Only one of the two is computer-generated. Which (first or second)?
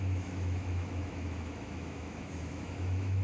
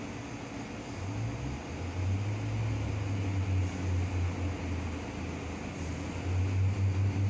first